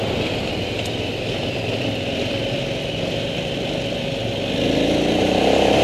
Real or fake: fake